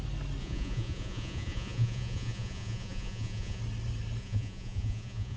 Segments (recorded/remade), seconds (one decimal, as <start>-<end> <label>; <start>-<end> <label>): 0.0-0.4 recorded; 0.4-3.6 remade; 3.6-4.2 recorded; 4.2-5.4 remade